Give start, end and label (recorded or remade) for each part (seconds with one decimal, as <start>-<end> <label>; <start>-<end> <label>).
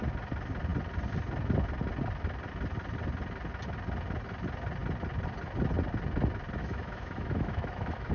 0.0-6.6 recorded; 6.6-8.1 remade